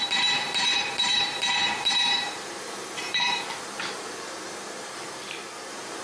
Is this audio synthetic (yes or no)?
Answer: yes